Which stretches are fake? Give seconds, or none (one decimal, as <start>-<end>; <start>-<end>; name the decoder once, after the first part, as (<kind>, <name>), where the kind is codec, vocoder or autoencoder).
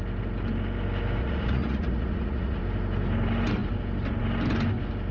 1.2-2.6 (vocoder, Vocos)